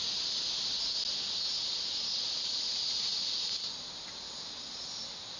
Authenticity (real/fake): real